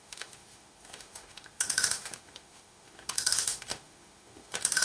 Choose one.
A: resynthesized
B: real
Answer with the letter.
A